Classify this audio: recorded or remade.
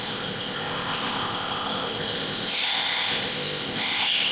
remade